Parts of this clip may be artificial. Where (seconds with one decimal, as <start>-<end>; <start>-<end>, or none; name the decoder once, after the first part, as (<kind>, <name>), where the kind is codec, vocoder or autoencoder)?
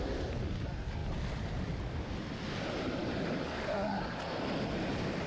3.0-4.2 (codec, DAC)